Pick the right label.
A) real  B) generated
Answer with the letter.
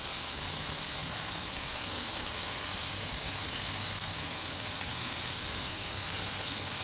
B